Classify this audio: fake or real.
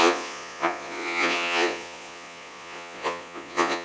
fake